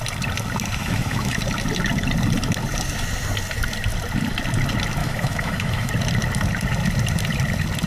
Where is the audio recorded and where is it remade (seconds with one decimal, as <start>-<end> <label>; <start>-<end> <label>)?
0.0-0.8 recorded; 0.8-1.4 remade; 1.4-5.0 recorded; 5.0-5.9 remade; 5.9-7.9 recorded